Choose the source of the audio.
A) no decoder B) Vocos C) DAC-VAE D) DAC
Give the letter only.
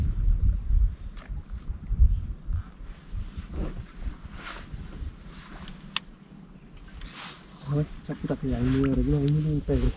A